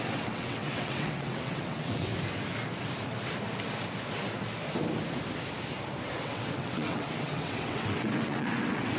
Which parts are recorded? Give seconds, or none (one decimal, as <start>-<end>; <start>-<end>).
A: 2.1-6.2